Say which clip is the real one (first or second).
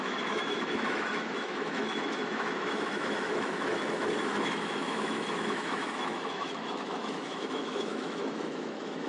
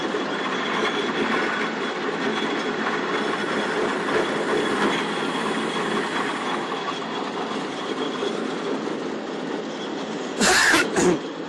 second